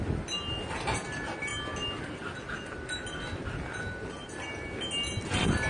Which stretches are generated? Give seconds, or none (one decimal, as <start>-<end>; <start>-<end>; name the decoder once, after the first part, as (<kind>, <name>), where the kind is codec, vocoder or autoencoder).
none